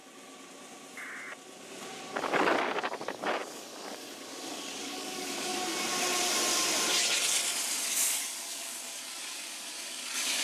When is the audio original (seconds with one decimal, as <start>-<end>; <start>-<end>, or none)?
0.0-2.2; 5.5-7.9